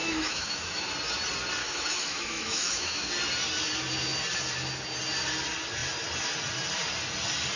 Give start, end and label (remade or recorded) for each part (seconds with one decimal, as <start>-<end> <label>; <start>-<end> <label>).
0.0-0.9 remade; 0.9-1.6 recorded; 1.6-3.1 remade; 3.1-7.6 recorded